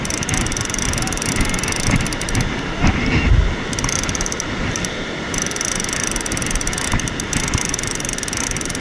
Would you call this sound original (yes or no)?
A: yes